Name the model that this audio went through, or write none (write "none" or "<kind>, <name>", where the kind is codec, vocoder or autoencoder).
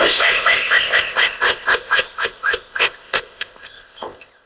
codec, ZipCodec